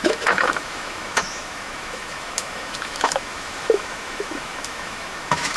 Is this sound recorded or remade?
remade